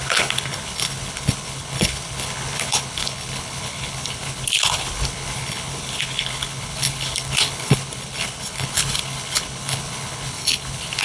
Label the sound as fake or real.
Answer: fake